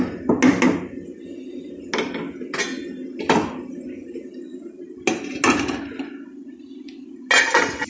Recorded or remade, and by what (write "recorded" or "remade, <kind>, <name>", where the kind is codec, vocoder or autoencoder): recorded